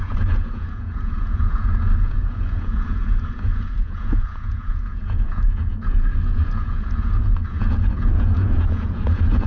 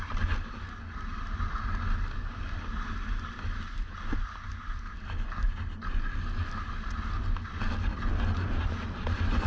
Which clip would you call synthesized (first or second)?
first